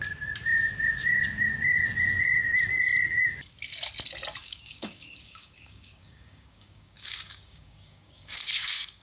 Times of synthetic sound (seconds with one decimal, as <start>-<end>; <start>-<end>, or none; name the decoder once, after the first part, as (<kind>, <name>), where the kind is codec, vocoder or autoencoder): 4.4-9.0 (codec, DAC)